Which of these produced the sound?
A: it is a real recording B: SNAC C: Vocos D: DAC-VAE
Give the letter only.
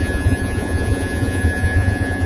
C